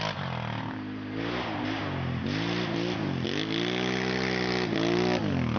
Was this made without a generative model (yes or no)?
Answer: yes